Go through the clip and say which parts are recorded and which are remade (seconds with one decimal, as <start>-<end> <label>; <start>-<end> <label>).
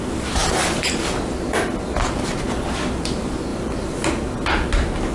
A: 0.0-0.4 recorded; 0.4-1.0 remade; 1.0-3.5 recorded; 3.5-4.2 remade; 4.2-5.1 recorded